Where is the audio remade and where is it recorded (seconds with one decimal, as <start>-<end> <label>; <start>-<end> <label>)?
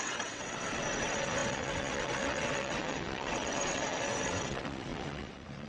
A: 0.0-5.7 remade